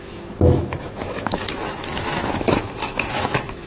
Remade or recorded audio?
remade